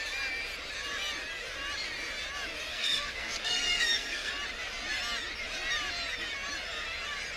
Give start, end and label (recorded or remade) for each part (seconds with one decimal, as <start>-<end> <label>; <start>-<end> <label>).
0.0-2.7 recorded; 2.7-4.3 remade; 4.3-7.4 recorded